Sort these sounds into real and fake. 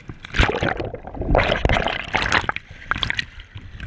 real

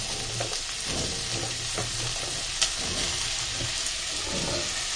real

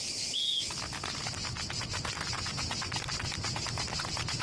real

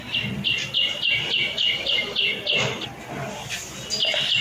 real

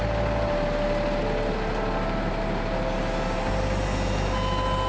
real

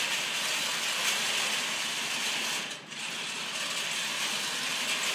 real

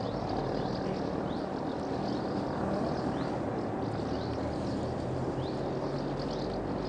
real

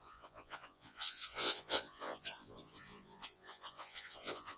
fake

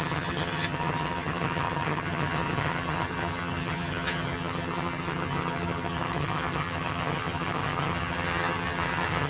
fake